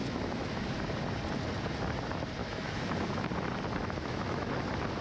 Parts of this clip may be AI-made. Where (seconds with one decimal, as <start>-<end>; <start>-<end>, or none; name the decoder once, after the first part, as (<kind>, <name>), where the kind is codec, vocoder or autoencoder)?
0.0-0.7 (autoencoder, DAC-VAE); 2.4-3.1; 3.8-4.5